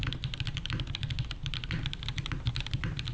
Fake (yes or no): yes